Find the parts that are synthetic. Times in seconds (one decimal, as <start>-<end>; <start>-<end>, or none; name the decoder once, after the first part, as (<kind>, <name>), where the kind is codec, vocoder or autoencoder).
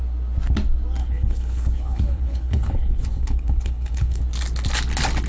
1.0-4.2 (codec, HILCodec)